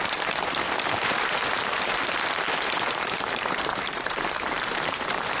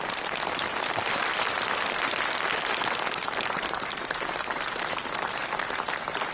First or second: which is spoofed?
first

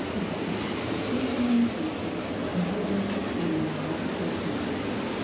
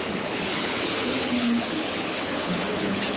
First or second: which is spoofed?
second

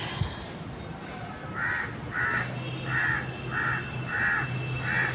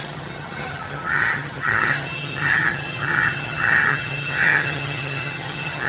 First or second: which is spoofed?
second